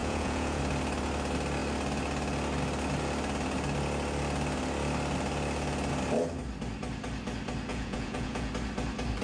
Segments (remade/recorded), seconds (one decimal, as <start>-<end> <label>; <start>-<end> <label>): 0.0-0.6 remade; 0.6-7.7 recorded; 7.7-8.5 remade; 8.5-9.2 recorded